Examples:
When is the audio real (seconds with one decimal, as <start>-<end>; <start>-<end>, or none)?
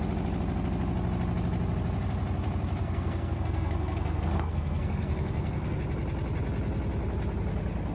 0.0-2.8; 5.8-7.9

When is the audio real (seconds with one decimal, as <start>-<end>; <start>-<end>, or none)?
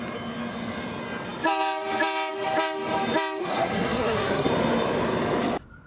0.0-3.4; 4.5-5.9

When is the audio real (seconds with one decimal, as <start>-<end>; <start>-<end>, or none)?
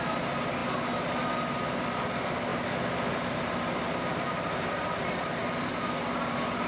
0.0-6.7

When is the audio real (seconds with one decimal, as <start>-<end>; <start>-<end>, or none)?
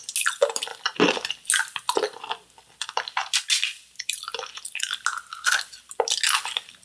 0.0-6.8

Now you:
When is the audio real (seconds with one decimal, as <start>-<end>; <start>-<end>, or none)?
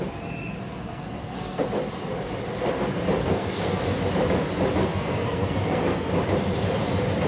0.0-0.7; 1.6-3.2; 3.8-4.8; 6.1-7.3